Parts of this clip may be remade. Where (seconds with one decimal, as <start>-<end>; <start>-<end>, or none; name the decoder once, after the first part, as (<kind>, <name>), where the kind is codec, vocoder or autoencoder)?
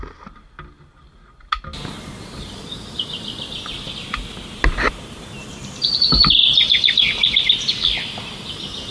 none